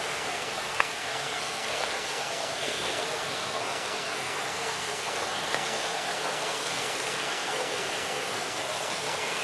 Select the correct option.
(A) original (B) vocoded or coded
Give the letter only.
B